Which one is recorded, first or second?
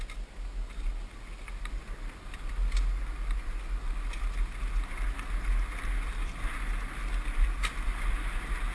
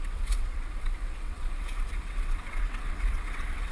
first